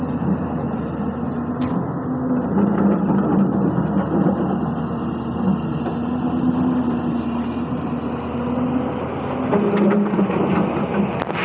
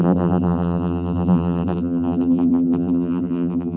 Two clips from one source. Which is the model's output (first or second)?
second